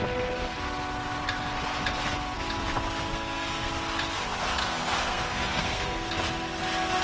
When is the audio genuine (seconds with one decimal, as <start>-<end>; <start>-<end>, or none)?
0.0-3.1; 3.7-4.6; 6.1-7.0